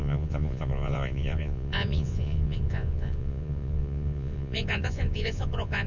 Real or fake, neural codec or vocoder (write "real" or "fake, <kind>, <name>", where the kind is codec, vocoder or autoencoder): fake, vocoder, Vocos